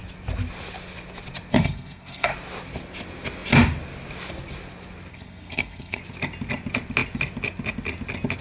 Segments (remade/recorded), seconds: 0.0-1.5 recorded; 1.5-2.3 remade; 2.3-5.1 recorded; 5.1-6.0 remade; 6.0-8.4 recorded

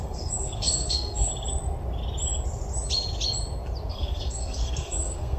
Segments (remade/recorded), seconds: 0.0-1.3 remade; 1.3-3.9 recorded; 3.9-5.4 remade

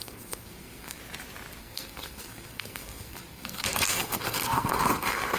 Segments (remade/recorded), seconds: 0.0-1.0 remade; 1.0-1.6 recorded; 1.6-5.4 remade

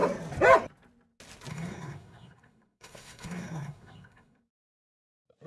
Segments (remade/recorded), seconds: 0.0-1.5 recorded; 1.5-4.4 remade; 4.4-5.5 recorded

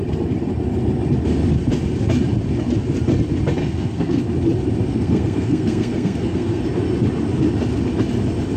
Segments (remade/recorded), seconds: 0.0-3.6 recorded; 3.6-4.2 remade; 4.2-4.9 recorded; 4.9-6.6 remade; 6.6-8.6 recorded

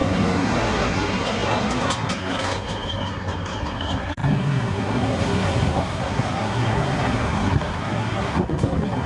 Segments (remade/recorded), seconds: 0.0-9.1 remade

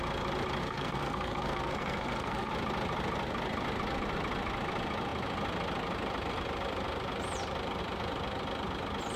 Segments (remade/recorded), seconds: 0.0-0.6 recorded; 0.6-2.5 remade; 2.5-9.2 recorded

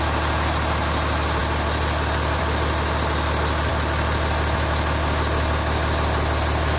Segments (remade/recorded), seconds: 0.0-6.8 recorded